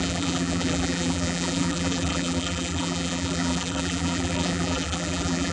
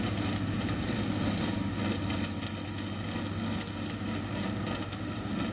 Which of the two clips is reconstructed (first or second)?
first